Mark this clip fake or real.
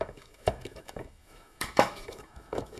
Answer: fake